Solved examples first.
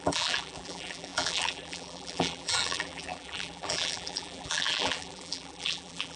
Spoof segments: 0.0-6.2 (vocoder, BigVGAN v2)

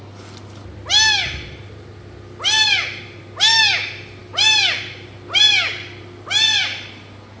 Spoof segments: none

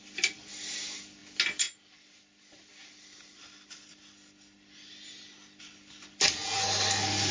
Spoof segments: none